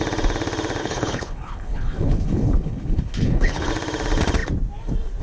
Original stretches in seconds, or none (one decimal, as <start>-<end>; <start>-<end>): 0.0-0.8; 3.7-5.2